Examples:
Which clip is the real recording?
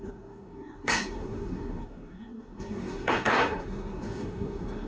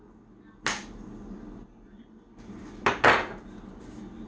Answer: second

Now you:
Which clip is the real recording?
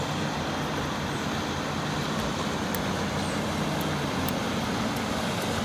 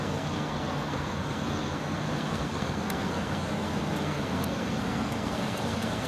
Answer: first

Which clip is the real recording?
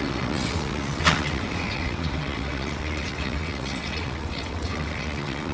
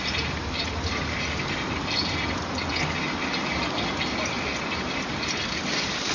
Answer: second